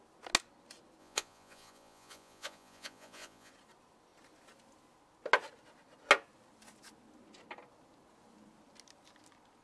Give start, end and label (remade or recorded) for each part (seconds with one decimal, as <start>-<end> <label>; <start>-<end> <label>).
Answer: 0.0-1.0 recorded; 1.0-3.5 remade; 3.5-9.6 recorded